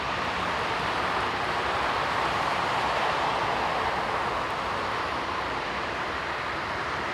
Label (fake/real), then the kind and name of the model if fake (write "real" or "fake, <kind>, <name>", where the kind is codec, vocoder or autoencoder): fake, vocoder, BigVGAN v2